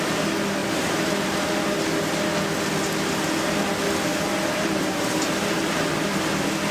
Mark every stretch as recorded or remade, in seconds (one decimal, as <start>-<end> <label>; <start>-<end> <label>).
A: 0.0-0.6 recorded; 0.6-1.4 remade; 1.4-4.1 recorded; 4.1-6.2 remade; 6.2-6.7 recorded